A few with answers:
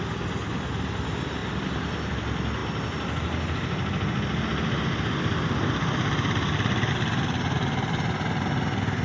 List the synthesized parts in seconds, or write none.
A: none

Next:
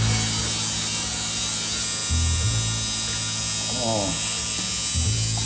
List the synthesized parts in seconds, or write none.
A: none

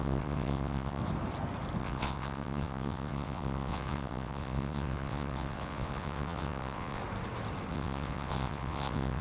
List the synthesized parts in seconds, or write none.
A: 0.0-1.0 (vocoder, WaveNeXt); 1.8-7.0; 7.7-9.2

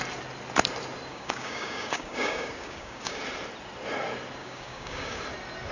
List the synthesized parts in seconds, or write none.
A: 1.1-3.2 (codec, DAC); 4.4-5.2

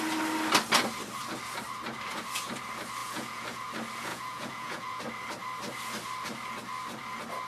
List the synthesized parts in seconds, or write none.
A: 3.0-3.6 (vocoder, Vocos); 4.1-5.0

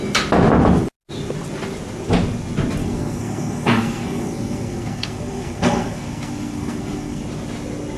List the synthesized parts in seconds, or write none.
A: 2.8-7.2 (codec, SNAC)

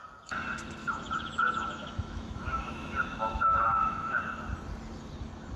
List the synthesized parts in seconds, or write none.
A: 0.8-4.2 (autoencoder, DAC-VAE)